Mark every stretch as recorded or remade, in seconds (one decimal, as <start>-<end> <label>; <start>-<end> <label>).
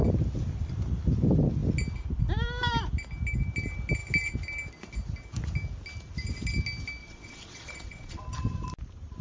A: 0.0-7.0 recorded; 7.0-8.2 remade; 8.2-9.2 recorded